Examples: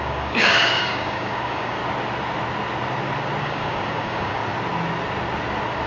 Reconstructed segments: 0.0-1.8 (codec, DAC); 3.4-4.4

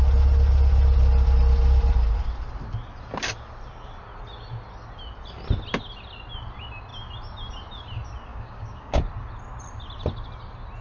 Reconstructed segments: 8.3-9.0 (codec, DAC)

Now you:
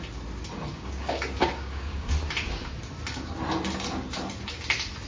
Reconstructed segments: 0.7-2.1 (codec, DAC)